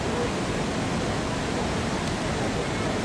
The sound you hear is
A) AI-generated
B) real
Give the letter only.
B